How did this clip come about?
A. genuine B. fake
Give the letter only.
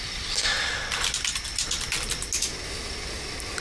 A